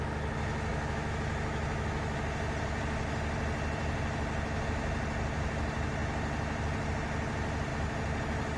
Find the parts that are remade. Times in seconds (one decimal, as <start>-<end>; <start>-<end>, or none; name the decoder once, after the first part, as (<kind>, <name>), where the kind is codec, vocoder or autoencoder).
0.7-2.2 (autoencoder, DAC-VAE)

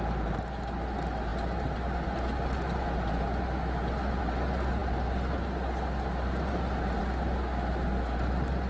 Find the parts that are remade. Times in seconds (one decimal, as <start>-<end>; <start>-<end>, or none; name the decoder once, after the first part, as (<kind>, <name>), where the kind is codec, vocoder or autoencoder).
none

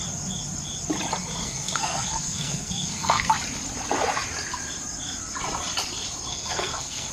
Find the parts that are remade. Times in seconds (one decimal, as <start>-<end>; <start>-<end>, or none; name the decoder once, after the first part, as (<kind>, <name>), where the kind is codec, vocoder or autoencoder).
1.4-3.3 (codec, SNAC); 6.3-7.1

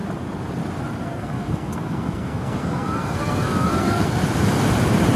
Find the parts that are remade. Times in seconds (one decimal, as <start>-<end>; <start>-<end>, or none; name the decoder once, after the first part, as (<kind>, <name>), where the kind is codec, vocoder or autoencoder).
1.0-4.1 (codec, SNAC)

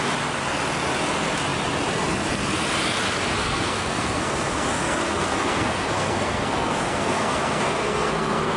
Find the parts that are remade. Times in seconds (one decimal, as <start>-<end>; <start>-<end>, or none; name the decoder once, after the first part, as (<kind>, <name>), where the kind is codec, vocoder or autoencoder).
3.4-8.6 (codec, SNAC)

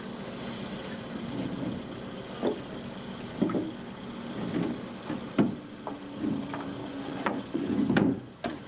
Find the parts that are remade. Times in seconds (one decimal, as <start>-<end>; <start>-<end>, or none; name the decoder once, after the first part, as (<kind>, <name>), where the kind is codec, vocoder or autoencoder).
6.8-8.7 (vocoder, Vocos)

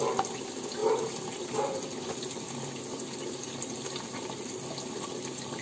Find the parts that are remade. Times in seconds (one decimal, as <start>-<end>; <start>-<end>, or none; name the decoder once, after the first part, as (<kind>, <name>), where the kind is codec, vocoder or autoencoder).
none

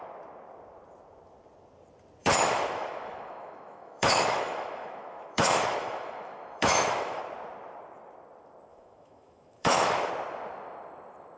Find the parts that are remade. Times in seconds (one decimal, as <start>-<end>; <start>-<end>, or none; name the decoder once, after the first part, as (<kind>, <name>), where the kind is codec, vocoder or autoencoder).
2.2-7.2 (autoencoder, DAC-VAE); 8.7-10.1